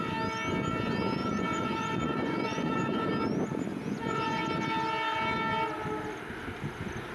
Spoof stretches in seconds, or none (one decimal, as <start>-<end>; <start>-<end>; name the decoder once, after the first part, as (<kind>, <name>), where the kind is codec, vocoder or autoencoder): 1.2-3.1 (vocoder, Vocos); 3.7-4.4